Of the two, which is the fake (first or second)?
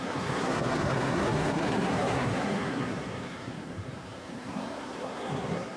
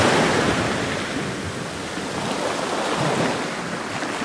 first